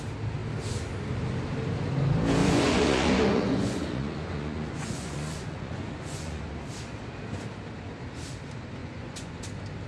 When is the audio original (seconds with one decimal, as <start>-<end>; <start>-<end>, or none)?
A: 0.0-2.4; 6.4-8.8; 9.4-9.9